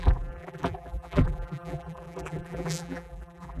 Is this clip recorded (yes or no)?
no